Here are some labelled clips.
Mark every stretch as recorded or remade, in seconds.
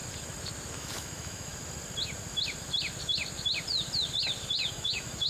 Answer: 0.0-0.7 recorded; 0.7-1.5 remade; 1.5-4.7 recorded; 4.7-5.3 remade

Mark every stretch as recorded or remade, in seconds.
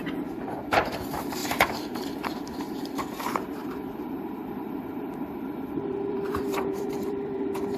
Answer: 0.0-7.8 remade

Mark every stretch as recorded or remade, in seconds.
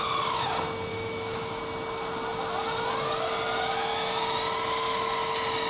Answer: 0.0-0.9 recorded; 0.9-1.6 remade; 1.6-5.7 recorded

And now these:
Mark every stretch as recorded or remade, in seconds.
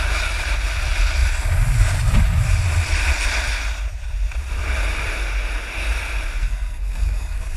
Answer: 0.0-6.4 recorded; 6.4-7.6 remade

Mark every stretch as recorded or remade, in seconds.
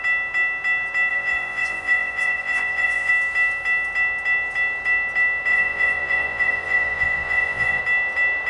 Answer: 0.0-1.1 recorded; 1.1-3.1 remade; 3.1-5.5 recorded; 5.5-7.8 remade; 7.8-8.5 recorded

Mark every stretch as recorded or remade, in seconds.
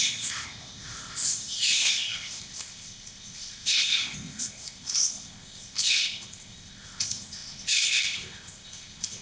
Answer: 0.0-9.2 remade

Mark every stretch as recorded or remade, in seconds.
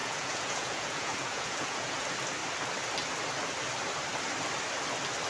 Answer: 0.0-1.9 remade; 1.9-5.3 recorded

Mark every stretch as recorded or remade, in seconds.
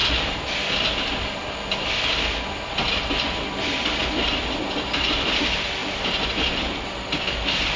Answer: 0.0-0.7 remade; 0.7-5.8 recorded; 5.8-6.8 remade; 6.8-7.8 recorded